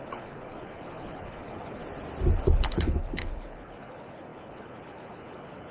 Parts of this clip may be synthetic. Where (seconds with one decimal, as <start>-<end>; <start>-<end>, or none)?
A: 0.0-1.8; 2.4-5.7

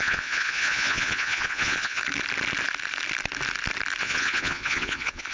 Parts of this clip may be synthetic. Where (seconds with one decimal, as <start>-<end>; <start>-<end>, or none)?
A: 0.0-2.0; 4.0-5.3

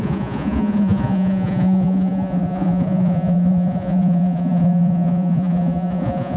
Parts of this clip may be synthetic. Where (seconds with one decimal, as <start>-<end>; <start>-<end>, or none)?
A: 0.0-6.4

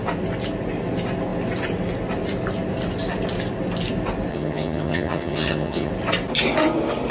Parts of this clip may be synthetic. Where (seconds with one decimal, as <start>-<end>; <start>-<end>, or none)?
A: 4.3-5.9

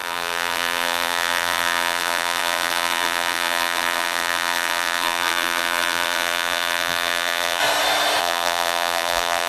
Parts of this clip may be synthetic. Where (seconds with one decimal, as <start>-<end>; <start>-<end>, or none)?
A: 0.0-7.6; 8.2-9.5